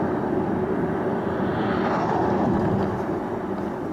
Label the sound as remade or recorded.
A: recorded